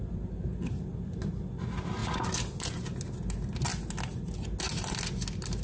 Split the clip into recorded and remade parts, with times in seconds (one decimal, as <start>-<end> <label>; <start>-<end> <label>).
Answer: 0.0-5.6 recorded